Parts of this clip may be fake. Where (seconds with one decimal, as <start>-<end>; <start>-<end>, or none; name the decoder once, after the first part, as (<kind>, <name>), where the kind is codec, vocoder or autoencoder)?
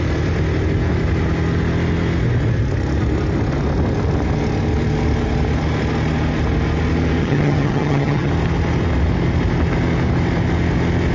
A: 7.2-8.3 (vocoder, HiFi-GAN)